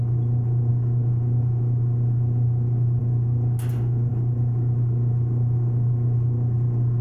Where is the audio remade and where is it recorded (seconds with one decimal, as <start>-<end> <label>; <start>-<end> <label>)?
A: 0.0-7.0 recorded